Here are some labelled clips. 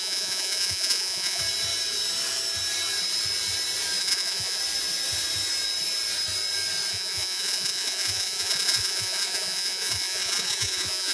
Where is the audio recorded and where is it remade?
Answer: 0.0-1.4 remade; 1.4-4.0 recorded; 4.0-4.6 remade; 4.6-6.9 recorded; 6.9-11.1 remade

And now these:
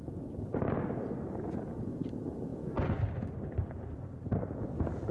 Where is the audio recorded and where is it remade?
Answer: 0.0-5.1 recorded

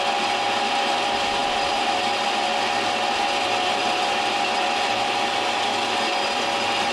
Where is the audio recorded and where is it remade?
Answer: 0.0-6.9 recorded